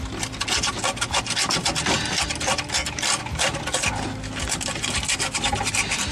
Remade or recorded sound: recorded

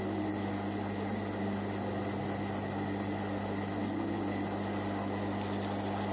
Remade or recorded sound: recorded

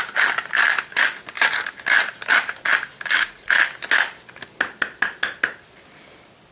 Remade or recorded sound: recorded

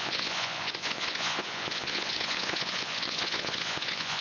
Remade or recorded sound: remade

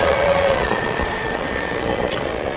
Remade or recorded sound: remade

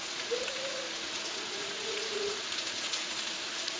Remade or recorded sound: remade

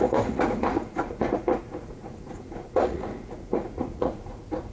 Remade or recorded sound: remade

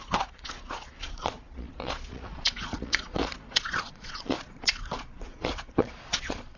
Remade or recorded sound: remade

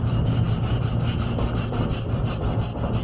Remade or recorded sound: recorded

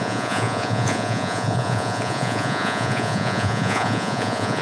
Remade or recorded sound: remade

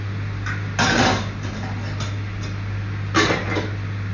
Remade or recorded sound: recorded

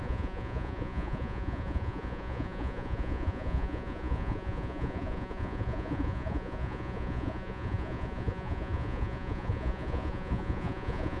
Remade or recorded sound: remade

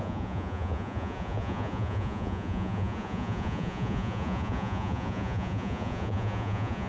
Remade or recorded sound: remade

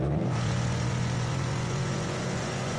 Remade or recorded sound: remade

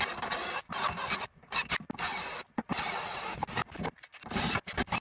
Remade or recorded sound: recorded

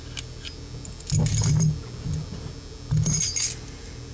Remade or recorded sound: recorded